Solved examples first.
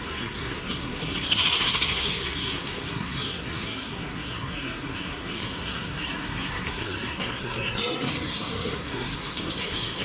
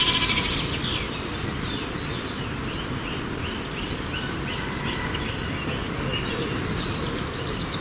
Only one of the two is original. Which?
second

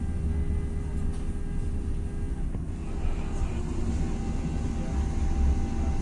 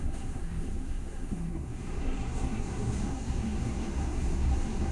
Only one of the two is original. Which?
first